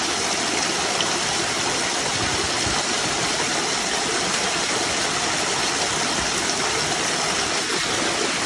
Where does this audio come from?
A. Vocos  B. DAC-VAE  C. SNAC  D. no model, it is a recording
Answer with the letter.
D